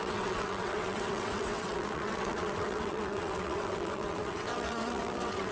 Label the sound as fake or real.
fake